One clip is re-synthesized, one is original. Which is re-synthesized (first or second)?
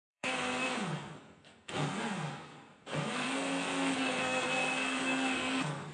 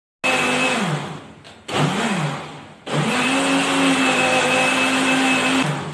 first